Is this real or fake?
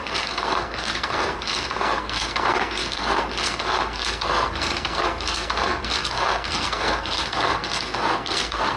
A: fake